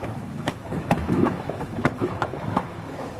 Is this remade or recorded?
remade